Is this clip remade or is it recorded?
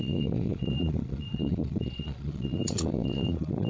remade